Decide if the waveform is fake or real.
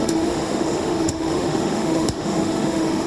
fake